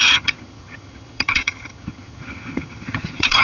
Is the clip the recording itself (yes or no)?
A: no